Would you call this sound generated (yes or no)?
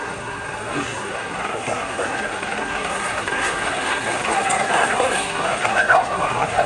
yes